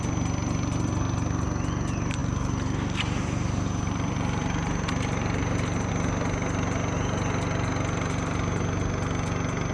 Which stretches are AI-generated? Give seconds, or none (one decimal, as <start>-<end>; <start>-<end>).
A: 2.2-5.9